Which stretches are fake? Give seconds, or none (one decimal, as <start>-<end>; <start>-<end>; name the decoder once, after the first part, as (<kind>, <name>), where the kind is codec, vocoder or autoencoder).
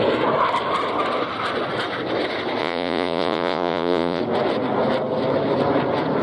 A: 2.6-4.2 (vocoder, Vocos)